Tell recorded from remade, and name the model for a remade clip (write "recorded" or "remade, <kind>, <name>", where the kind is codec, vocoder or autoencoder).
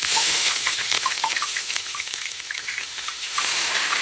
remade, autoencoder, DAC-VAE